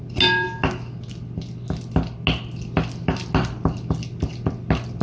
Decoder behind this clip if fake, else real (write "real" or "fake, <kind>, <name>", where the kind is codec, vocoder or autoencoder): real